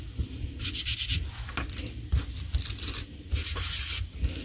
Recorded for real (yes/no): yes